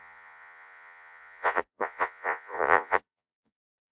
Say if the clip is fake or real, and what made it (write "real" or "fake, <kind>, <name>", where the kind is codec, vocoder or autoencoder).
fake, vocoder, Vocos